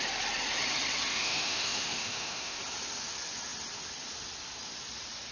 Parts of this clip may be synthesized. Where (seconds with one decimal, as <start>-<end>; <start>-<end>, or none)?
1.1-2.6